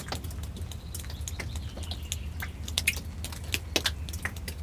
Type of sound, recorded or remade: recorded